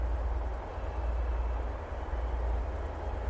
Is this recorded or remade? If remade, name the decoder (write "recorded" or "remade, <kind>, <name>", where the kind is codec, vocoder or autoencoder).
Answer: recorded